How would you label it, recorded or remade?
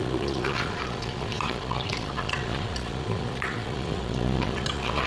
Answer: remade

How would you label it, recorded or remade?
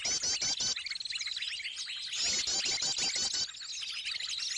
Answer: recorded